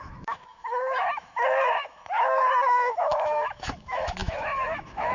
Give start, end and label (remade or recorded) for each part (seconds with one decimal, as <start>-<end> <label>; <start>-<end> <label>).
0.0-5.1 remade